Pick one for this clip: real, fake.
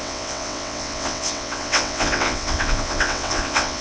fake